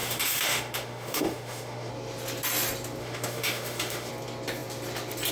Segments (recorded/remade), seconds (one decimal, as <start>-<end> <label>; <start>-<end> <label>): 0.0-1.9 remade; 1.9-3.0 recorded; 3.0-4.1 remade; 4.1-5.3 recorded